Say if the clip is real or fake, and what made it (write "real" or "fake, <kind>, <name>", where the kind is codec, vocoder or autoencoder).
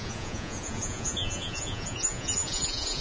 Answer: fake, vocoder, Vocos